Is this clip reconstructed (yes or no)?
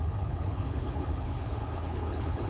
yes